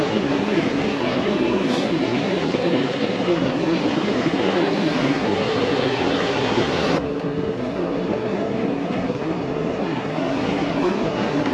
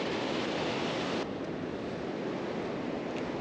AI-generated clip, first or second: first